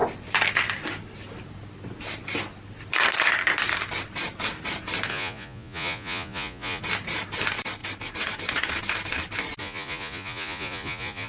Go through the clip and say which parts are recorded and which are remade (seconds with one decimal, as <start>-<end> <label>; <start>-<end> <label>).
0.0-5.1 recorded; 5.1-6.8 remade; 6.8-9.6 recorded; 9.6-11.3 remade